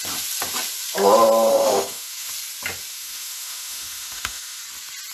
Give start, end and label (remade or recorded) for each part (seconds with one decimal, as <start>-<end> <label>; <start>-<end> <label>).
0.0-1.5 recorded; 1.5-2.3 remade; 2.3-2.9 recorded; 2.9-4.6 remade; 4.6-5.1 recorded